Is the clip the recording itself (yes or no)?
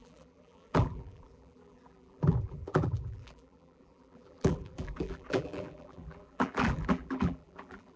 no